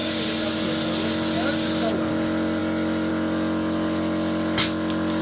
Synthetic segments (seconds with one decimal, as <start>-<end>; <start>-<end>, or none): none